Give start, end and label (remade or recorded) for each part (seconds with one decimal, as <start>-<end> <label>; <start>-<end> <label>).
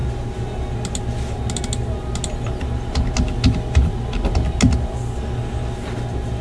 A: 0.0-6.4 recorded